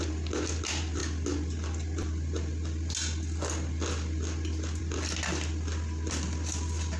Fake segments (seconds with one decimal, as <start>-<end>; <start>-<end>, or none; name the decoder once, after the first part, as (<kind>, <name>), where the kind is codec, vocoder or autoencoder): none